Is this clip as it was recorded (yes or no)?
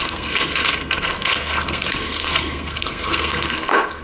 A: no